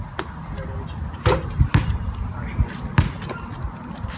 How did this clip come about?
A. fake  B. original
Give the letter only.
B